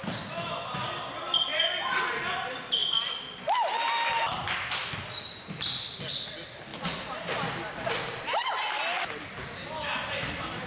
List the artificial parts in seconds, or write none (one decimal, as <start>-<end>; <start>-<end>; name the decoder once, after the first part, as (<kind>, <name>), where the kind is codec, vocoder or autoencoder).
none